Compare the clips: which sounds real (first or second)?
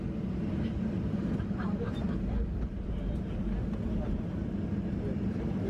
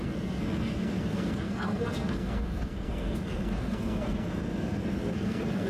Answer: first